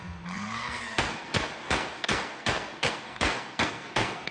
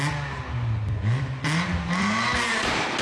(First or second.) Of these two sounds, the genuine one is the second